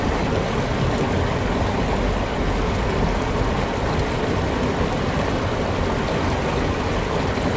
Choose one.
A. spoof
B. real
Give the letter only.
B